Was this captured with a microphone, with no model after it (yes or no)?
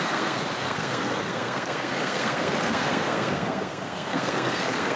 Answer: no